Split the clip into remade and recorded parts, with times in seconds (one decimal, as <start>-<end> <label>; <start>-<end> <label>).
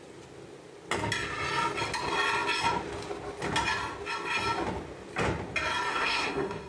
0.0-5.9 recorded; 5.9-6.7 remade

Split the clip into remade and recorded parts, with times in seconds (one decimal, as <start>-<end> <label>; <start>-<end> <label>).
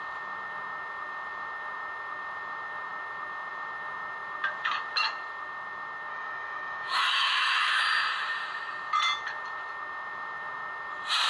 0.0-6.1 recorded; 6.1-7.7 remade; 7.7-11.3 recorded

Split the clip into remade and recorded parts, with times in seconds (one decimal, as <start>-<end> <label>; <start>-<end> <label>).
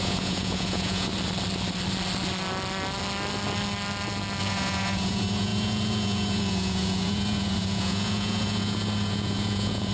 0.0-1.1 remade; 1.1-4.4 recorded; 4.4-9.9 remade